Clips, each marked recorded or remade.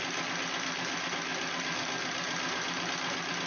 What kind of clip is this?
recorded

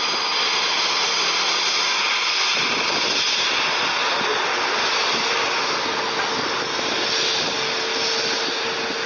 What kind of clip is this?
recorded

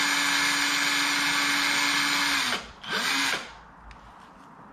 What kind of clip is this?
recorded